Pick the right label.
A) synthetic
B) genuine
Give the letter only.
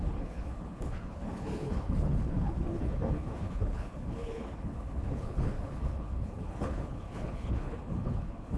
A